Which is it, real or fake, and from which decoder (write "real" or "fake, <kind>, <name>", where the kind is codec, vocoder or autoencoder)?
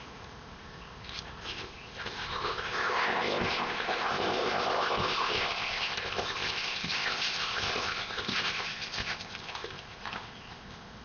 fake, codec, ZipCodec